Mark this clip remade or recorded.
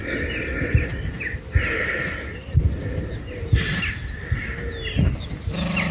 recorded